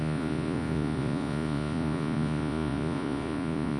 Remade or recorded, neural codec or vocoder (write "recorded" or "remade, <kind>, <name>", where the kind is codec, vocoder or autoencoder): remade, vocoder, Vocos